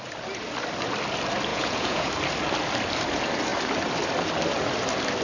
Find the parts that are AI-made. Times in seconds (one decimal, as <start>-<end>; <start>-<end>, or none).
1.5-2.1